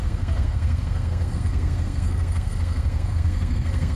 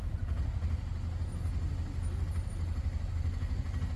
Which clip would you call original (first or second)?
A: second